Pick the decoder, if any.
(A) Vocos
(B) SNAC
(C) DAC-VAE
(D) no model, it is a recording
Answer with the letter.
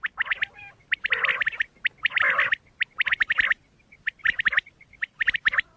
D